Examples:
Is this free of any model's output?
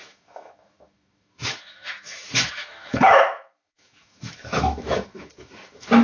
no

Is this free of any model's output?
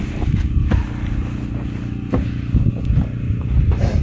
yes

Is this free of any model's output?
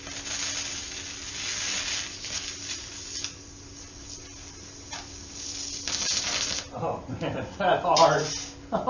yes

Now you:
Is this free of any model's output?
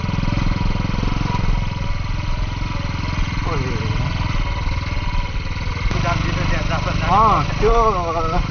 yes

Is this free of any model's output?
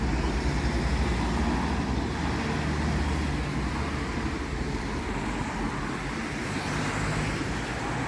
yes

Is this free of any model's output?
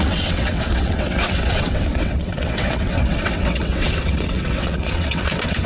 no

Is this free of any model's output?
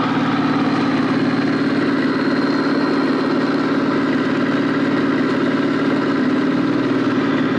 yes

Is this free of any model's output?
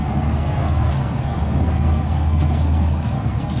no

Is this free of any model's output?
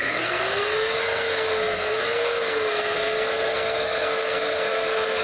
no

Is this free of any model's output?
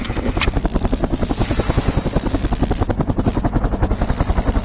yes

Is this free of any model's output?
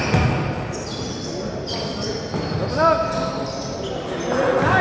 yes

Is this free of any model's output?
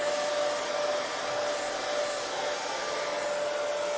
yes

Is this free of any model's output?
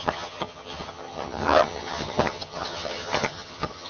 no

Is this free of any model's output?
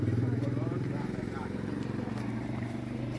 no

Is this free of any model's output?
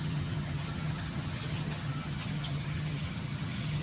no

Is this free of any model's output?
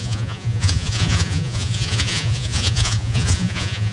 no